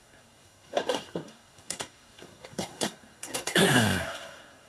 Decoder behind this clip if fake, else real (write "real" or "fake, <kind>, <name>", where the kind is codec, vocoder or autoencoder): fake, codec, SNAC